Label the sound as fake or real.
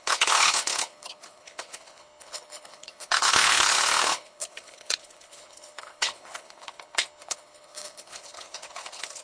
fake